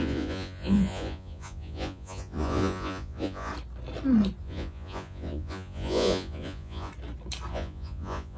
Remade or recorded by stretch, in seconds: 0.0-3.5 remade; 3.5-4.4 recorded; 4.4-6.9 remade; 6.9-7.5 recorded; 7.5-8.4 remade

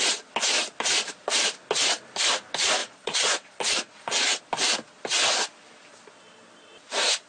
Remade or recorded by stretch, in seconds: 0.0-2.8 recorded; 2.8-4.4 remade; 4.4-7.3 recorded

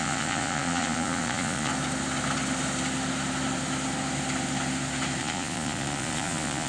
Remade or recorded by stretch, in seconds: 0.0-1.7 remade; 1.7-5.2 recorded; 5.2-6.7 remade

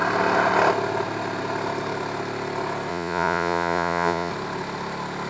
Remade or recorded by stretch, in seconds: 0.0-2.9 recorded; 2.9-4.3 remade; 4.3-5.3 recorded

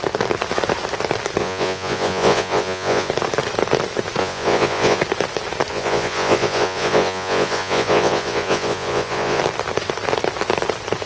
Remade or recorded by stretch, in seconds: 0.0-1.4 recorded; 1.4-3.1 remade; 3.1-4.2 recorded; 4.2-5.0 remade; 5.0-5.7 recorded; 5.7-9.4 remade; 9.4-11.1 recorded